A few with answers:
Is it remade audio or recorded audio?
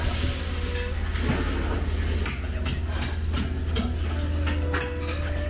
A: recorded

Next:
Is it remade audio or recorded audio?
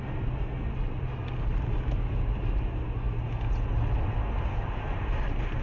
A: recorded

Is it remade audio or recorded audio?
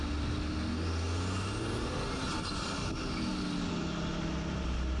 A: recorded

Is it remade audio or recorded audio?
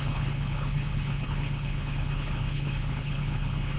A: remade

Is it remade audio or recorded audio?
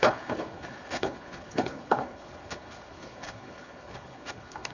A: remade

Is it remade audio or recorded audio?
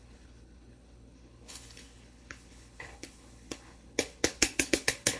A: remade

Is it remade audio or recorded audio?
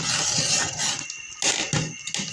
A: recorded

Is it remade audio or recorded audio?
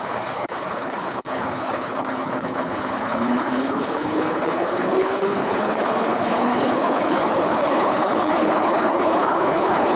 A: remade